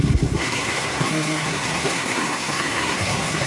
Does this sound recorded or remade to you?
remade